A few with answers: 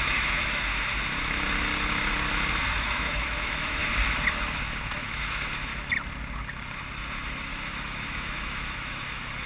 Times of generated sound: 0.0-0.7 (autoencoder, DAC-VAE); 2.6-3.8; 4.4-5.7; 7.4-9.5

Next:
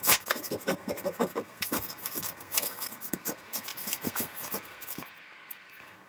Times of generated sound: 0.0-6.1 (codec, SNAC)

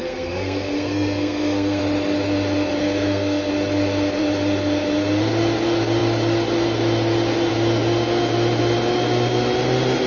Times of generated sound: 0.0-1.8 (codec, SNAC); 2.8-3.5

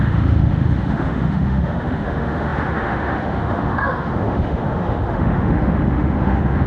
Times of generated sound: 0.0-6.7 (autoencoder, DAC-VAE)

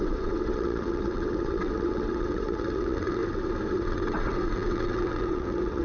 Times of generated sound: 0.0-3.2 (vocoder, WaveNeXt); 3.7-5.8